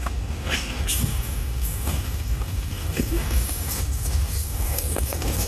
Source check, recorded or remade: remade